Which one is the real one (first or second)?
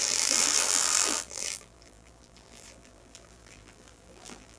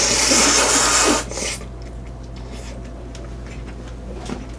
second